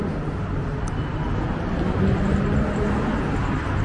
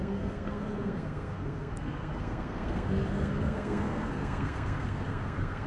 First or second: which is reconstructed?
second